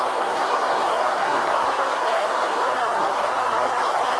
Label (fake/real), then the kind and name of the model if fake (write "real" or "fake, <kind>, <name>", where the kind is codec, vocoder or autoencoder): fake, codec, SNAC